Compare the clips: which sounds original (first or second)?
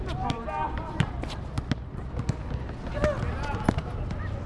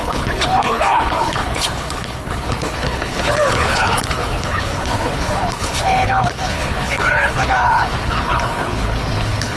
first